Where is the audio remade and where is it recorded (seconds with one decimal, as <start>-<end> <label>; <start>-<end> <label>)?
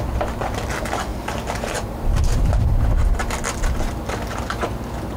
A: 0.0-1.1 recorded; 1.1-3.2 remade; 3.2-5.2 recorded